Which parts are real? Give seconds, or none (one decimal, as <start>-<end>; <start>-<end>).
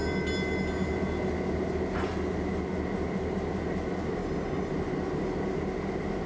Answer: 0.0-4.2; 4.7-6.3